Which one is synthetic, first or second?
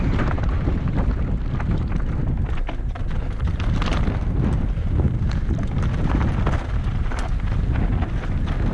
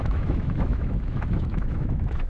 second